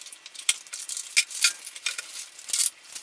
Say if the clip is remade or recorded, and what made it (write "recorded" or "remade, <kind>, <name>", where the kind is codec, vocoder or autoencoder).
recorded